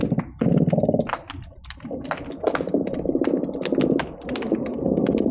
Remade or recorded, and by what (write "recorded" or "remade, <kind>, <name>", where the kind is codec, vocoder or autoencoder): recorded